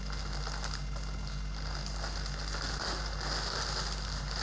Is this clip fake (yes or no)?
no